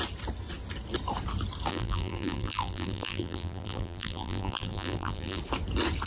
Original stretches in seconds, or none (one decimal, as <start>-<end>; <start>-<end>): 0.0-1.7; 5.4-6.1